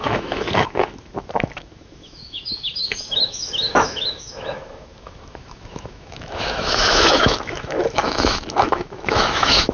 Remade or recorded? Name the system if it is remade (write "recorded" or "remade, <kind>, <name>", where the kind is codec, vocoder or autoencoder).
remade, autoencoder, DAC-VAE